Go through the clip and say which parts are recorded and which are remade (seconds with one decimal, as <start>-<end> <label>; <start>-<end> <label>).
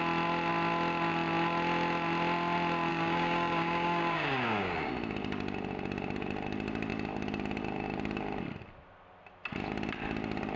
0.0-2.9 recorded; 2.9-4.9 remade; 4.9-10.6 recorded